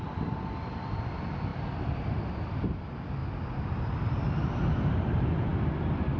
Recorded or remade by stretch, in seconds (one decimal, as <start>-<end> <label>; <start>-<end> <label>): 0.0-6.2 recorded